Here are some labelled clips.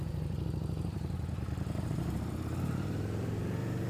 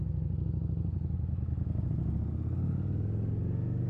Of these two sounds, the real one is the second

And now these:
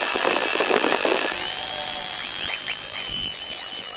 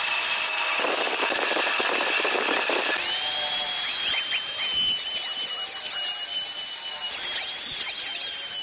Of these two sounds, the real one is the second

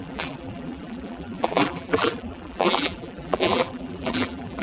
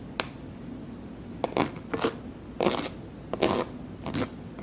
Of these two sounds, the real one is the second